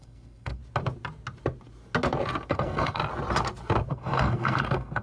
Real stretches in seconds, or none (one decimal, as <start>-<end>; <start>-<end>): 0.6-2.5; 3.0-3.9